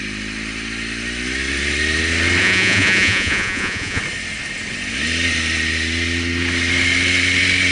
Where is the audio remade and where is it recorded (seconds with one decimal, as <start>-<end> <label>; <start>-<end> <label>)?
0.0-2.4 recorded; 2.4-4.0 remade; 4.0-7.7 recorded